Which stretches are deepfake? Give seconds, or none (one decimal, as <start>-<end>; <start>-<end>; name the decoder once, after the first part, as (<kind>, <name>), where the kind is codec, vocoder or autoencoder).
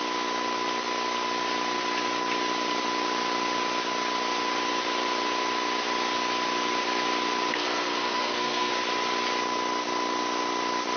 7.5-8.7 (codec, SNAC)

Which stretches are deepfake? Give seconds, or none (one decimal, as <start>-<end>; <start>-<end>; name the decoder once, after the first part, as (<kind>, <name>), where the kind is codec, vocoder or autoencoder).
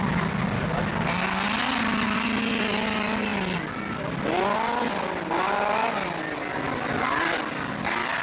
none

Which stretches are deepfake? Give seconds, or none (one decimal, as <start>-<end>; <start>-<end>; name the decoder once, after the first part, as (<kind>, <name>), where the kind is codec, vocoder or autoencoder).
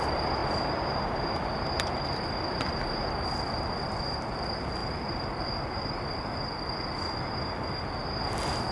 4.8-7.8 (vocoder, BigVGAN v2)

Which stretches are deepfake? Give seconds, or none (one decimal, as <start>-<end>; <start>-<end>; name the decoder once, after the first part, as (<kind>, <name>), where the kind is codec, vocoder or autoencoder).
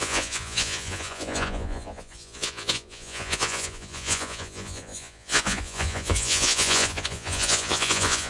0.0-8.3 (vocoder, Vocos)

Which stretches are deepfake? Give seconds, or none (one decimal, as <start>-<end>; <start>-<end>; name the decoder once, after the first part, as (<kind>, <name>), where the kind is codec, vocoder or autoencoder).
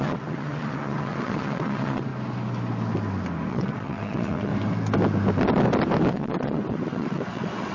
0.0-2.1 (vocoder, WaveNeXt); 3.5-4.5; 6.1-7.7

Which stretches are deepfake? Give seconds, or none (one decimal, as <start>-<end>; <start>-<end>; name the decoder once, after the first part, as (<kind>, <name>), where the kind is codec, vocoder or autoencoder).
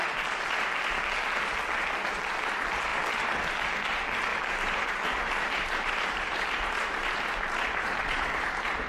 4.3-8.9 (vocoder, BigVGAN v2)